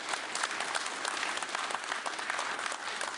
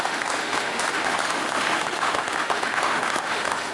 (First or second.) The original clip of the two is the first